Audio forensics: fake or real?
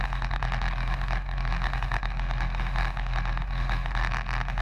fake